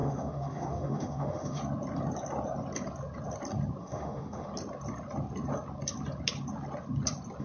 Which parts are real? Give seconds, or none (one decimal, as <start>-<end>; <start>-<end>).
1.6-3.8; 4.5-7.4